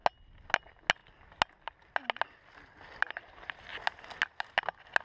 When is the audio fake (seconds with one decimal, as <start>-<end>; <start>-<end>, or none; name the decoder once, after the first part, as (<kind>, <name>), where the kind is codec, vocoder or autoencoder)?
none

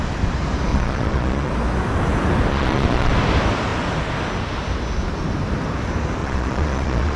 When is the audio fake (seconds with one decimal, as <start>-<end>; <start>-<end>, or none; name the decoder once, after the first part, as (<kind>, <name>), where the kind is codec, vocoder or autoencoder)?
0.7-1.5 (vocoder, Vocos); 2.5-3.1; 6.2-7.2

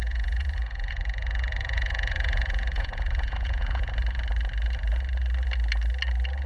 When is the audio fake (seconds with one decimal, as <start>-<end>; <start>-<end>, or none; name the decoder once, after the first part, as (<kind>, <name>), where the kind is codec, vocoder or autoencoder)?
0.0-3.9 (vocoder, Vocos)

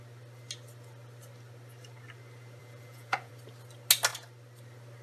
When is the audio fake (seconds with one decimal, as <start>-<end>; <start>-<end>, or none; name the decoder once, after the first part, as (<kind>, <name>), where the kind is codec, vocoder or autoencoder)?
2.6-3.3 (vocoder, Vocos)

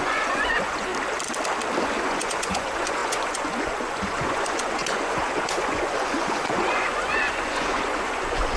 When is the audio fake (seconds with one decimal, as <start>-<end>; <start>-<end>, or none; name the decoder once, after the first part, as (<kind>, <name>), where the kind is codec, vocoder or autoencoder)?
0.0-0.9 (vocoder, Vocos); 1.8-8.6

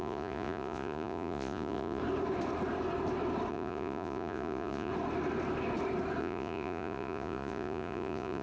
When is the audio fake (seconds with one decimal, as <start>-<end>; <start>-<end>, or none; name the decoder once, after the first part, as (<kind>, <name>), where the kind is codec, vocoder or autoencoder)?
0.0-2.0 (vocoder, Vocos); 3.5-4.9; 6.2-8.4

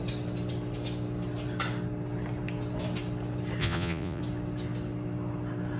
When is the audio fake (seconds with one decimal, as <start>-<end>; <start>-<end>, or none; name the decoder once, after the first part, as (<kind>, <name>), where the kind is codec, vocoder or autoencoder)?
3.6-4.2 (vocoder, Vocos)